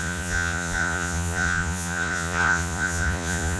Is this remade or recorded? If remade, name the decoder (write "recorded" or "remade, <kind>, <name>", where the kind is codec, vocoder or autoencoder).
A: remade, vocoder, Vocos